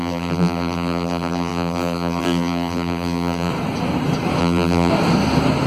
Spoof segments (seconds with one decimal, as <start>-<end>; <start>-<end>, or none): 0.0-3.5; 4.4-4.9